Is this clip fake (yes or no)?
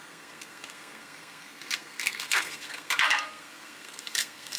yes